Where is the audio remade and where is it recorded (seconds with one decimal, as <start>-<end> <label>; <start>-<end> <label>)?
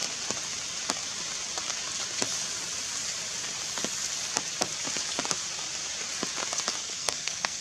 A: 0.0-6.8 recorded; 6.8-7.6 remade